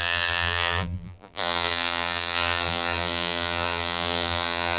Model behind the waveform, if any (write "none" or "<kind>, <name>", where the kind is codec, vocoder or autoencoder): vocoder, BigVGAN v2